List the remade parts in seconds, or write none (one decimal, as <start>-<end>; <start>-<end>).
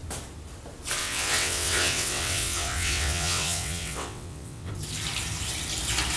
1.0-4.7